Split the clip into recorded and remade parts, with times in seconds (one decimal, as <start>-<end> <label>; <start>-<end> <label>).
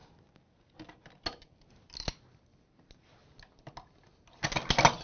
0.0-5.0 recorded